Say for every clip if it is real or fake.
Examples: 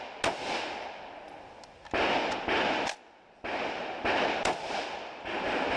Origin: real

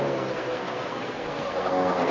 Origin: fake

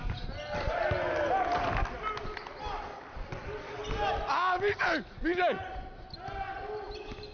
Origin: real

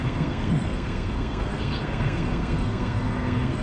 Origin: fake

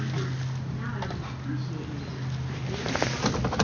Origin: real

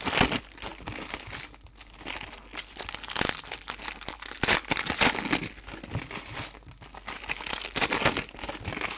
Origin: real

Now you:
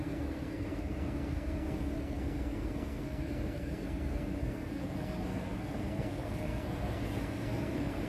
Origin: fake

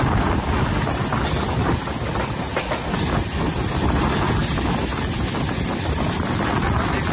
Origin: real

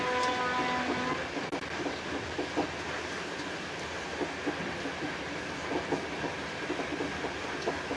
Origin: real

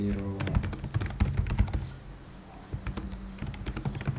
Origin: real